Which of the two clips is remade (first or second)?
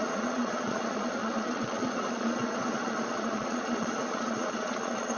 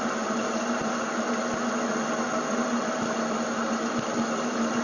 first